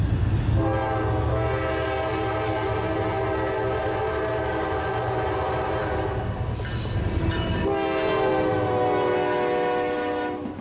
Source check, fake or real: real